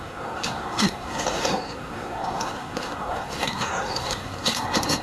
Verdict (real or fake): fake